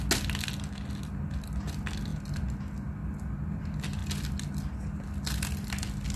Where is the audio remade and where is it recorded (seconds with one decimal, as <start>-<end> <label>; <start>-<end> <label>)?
0.0-6.2 recorded